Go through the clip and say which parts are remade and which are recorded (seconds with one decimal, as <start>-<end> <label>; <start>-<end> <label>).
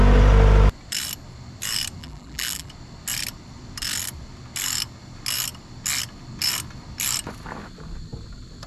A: 0.0-2.0 recorded; 2.0-2.7 remade; 2.7-8.7 recorded